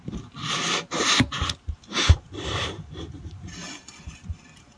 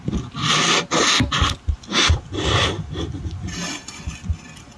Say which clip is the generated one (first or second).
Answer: first